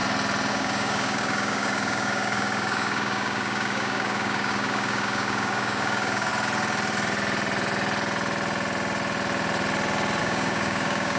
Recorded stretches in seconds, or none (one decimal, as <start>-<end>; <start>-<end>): 0.0-0.5; 6.3-10.2